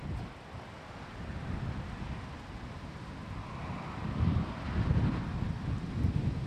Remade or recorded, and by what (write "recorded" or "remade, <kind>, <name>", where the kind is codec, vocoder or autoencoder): recorded